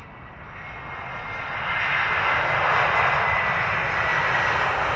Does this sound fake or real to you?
real